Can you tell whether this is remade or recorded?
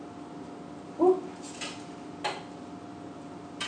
recorded